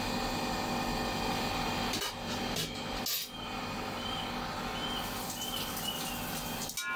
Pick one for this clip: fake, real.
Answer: real